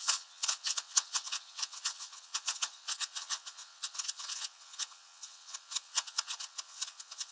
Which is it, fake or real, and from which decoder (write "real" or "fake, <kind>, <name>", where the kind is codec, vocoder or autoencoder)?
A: fake, vocoder, WaveNeXt